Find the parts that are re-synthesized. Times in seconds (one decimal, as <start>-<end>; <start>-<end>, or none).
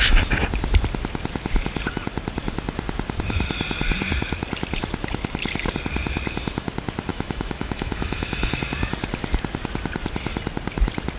7.1-8.6